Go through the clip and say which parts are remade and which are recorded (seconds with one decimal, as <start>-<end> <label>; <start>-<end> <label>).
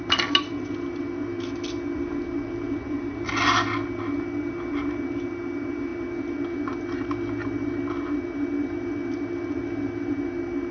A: 0.0-10.7 recorded